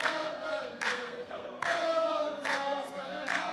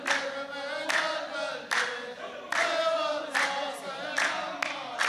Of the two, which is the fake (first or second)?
first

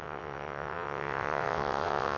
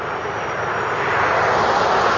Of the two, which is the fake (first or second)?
first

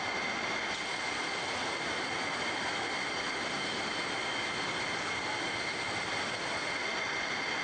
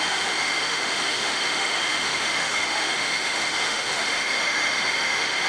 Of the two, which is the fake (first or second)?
second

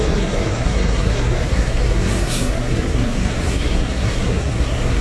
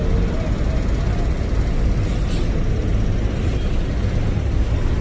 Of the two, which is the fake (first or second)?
first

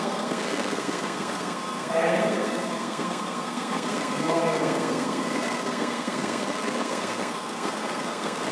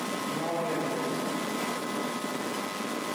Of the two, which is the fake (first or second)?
first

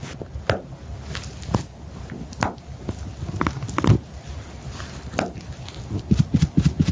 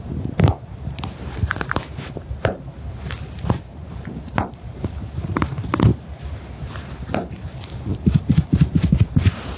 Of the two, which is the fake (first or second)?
second